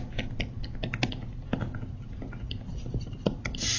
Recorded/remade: recorded